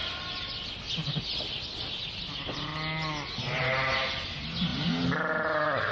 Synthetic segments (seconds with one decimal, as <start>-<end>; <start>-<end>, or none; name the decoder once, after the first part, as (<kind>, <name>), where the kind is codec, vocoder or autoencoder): none